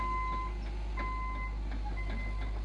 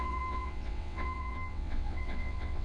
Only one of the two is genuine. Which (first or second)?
first